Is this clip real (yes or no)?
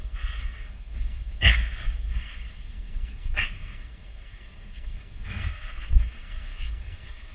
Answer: no